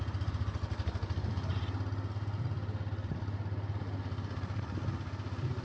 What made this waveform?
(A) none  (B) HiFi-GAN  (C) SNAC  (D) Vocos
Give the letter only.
A